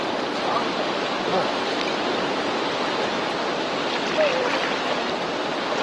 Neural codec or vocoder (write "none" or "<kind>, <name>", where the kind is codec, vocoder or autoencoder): none